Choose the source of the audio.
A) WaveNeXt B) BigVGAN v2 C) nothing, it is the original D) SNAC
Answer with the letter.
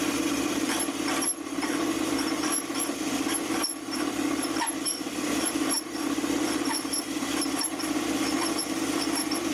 B